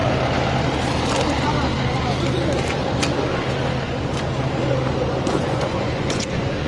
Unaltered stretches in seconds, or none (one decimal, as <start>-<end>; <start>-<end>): 0.0-5.4